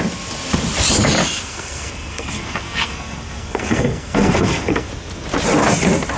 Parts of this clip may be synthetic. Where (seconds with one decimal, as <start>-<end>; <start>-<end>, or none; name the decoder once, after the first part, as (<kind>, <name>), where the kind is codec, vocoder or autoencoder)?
1.2-4.9 (codec, SNAC)